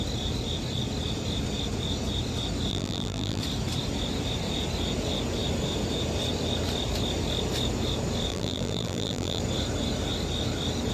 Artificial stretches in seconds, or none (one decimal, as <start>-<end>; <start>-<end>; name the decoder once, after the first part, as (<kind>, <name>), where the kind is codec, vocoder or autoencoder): 2.7-3.4 (vocoder, BigVGAN v2); 8.3-9.4